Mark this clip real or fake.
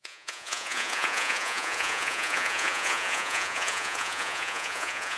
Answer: fake